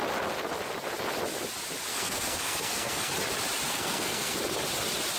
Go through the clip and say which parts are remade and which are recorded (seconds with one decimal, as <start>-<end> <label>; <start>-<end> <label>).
0.0-1.9 recorded; 1.9-3.1 remade; 3.1-3.7 recorded; 3.7-4.4 remade; 4.4-5.2 recorded